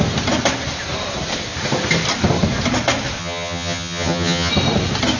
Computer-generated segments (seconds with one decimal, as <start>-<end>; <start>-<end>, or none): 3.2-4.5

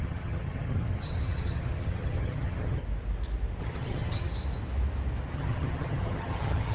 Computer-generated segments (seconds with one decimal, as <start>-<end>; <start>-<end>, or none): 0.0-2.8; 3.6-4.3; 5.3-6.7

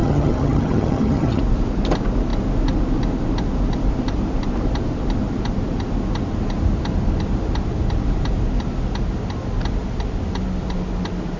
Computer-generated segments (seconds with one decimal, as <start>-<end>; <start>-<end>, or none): 0.0-1.4

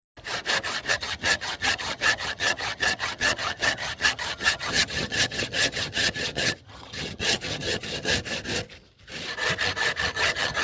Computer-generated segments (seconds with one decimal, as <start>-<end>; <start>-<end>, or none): 0.9-8.1; 10.1-10.6

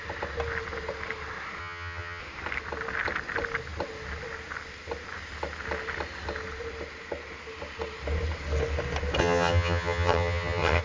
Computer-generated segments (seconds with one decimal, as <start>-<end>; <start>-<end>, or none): 1.6-2.2; 9.2-10.8